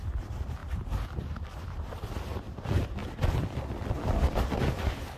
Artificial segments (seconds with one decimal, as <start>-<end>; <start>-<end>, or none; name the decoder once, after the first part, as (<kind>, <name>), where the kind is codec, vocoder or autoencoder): 0.6-1.9 (vocoder, BigVGAN v2)